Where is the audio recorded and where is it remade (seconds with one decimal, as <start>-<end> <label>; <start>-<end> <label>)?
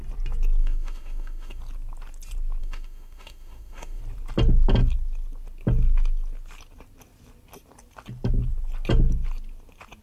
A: 0.0-0.6 recorded; 0.6-1.6 remade; 1.6-2.6 recorded; 2.6-4.0 remade; 4.0-10.0 recorded